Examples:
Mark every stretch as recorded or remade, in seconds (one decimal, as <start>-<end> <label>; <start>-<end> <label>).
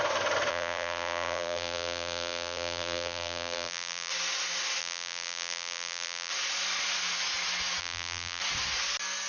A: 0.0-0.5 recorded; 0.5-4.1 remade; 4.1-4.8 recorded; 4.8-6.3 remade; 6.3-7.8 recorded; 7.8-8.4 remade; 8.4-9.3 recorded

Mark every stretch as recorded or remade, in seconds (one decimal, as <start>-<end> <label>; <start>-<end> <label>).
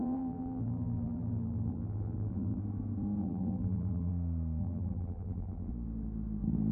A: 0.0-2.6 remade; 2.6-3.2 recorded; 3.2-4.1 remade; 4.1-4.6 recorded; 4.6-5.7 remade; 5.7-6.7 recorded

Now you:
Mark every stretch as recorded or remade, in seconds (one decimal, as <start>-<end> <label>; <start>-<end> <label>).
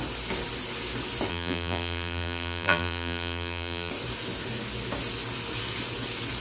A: 0.0-1.3 recorded; 1.3-3.9 remade; 3.9-6.4 recorded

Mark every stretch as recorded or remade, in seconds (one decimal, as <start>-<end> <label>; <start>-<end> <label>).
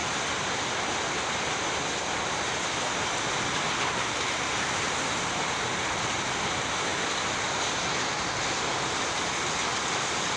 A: 0.0-4.0 remade; 4.0-10.4 recorded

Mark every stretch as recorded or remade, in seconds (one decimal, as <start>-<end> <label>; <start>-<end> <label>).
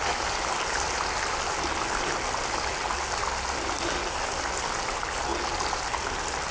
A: 0.0-6.5 recorded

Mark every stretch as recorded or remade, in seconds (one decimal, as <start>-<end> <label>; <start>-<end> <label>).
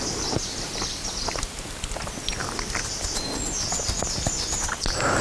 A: 0.0-5.2 recorded